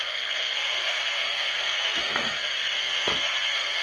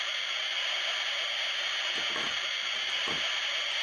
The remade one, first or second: first